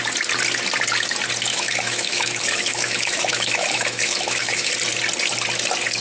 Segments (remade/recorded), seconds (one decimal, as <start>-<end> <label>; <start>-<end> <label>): 0.0-1.5 recorded; 1.5-4.7 remade; 4.7-6.0 recorded